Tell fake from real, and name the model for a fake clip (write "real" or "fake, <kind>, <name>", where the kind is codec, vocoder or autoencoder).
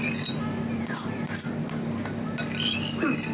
fake, vocoder, BigVGAN v2